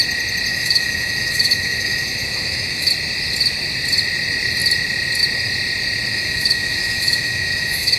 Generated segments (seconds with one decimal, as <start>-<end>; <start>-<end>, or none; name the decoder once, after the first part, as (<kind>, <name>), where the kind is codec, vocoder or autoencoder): 0.5-2.9 (autoencoder, DAC-VAE); 6.1-8.0